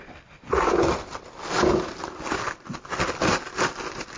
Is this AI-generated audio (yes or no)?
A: no